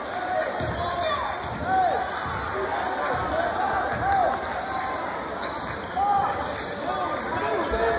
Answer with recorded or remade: recorded